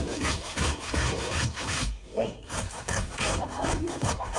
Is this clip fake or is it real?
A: fake